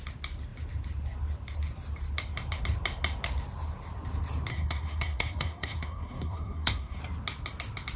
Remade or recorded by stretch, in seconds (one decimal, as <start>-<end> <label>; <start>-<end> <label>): 0.0-4.5 recorded; 4.5-7.0 remade; 7.0-8.0 recorded